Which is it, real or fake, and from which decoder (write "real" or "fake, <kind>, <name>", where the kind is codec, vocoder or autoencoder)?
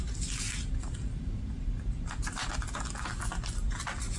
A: real